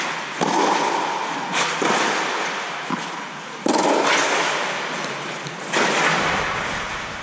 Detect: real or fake real